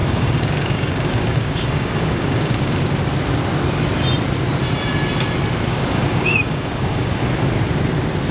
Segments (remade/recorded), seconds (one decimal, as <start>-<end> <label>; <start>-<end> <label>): 0.0-2.8 remade; 2.8-5.7 recorded; 5.7-7.2 remade; 7.2-8.3 recorded